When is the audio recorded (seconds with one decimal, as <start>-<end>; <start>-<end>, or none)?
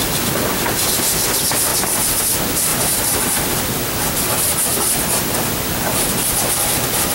0.0-2.7; 3.8-7.1